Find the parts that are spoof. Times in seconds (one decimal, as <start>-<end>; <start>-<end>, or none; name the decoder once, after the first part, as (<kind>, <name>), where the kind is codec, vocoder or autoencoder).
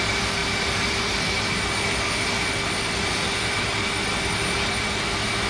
none